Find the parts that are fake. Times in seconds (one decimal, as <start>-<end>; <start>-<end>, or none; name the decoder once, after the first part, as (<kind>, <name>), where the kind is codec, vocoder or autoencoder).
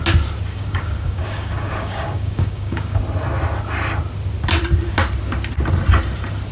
0.5-3.0 (codec, DAC)